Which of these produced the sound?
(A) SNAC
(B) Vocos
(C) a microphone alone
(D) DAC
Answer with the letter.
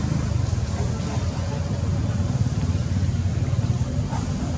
C